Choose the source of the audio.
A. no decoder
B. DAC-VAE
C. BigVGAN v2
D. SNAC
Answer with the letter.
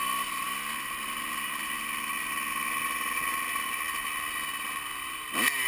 A